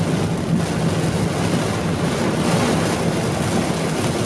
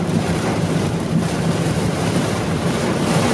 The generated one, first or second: second